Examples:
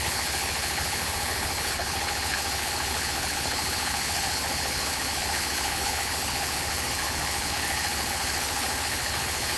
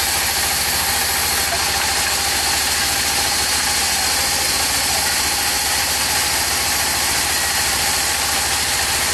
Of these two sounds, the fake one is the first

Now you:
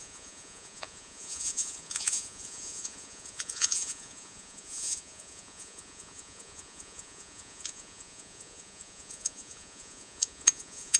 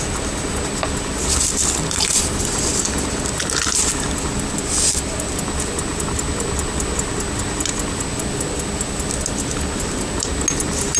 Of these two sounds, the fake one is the first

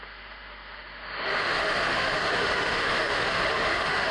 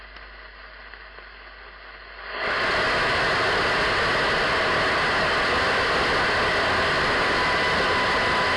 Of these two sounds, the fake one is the first